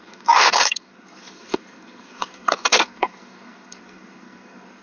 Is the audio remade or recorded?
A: remade